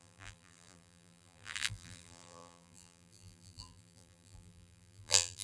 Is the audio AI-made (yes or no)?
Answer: yes